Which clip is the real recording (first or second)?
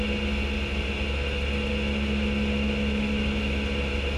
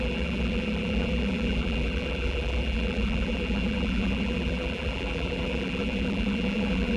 first